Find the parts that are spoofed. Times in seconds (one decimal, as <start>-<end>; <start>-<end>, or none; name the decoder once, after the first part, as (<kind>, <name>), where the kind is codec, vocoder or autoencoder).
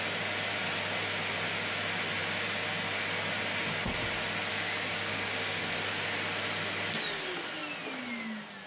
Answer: 4.5-5.6 (codec, DAC)